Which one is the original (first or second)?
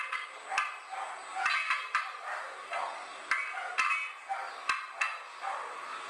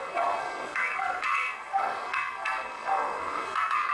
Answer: first